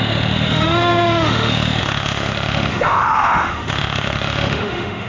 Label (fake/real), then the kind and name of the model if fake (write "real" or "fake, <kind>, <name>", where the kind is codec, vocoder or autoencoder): fake, autoencoder, DAC-VAE